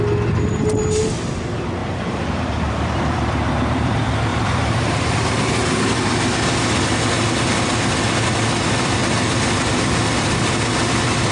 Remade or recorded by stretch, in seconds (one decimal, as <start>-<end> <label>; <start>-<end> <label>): 0.0-1.8 recorded; 1.8-3.9 remade; 3.9-4.3 recorded; 4.3-5.2 remade; 5.2-11.3 recorded